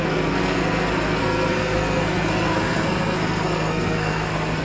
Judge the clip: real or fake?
fake